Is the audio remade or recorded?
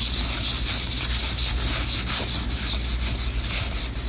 recorded